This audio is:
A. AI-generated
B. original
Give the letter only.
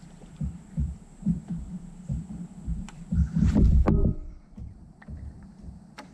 A